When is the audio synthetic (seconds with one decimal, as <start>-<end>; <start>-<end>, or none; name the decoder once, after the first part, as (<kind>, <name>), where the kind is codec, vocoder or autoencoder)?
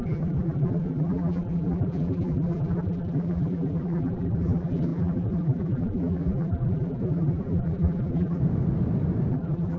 0.0-8.4 (vocoder, BigVGAN v2); 9.3-9.8